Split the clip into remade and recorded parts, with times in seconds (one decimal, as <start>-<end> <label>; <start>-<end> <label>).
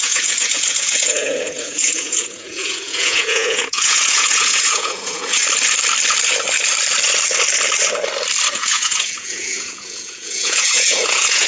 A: 0.0-5.4 remade; 5.4-8.5 recorded; 8.5-11.5 remade